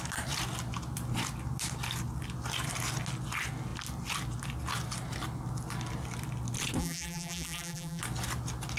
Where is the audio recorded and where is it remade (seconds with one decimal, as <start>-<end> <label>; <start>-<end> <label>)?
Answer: 0.0-6.8 recorded; 6.8-8.0 remade; 8.0-8.8 recorded